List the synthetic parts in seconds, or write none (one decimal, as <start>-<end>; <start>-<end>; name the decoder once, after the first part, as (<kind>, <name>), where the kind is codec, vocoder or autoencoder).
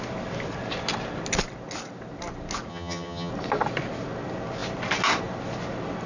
2.7-3.3 (vocoder, HiFi-GAN)